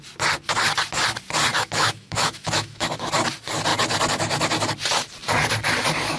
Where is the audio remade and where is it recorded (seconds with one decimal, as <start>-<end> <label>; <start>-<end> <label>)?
0.0-1.5 recorded; 1.5-3.1 remade; 3.1-6.2 recorded